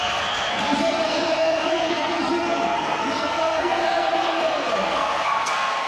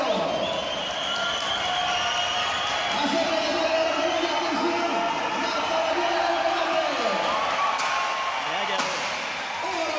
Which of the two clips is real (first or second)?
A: second